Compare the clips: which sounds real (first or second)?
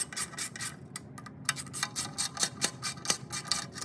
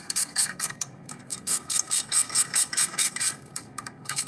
first